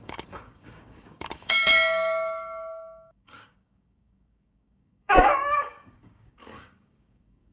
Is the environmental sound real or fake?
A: fake